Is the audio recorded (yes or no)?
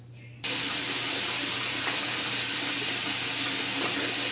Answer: yes